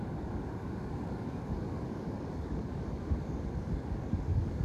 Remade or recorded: remade